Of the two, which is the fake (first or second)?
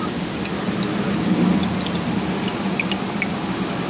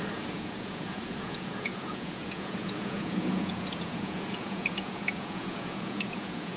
second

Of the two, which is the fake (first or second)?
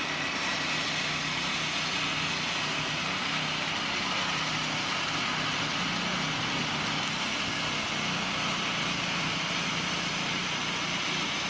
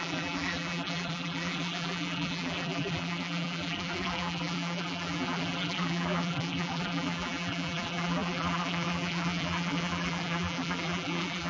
second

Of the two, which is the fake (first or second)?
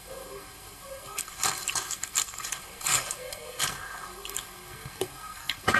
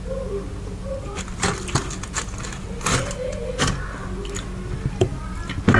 first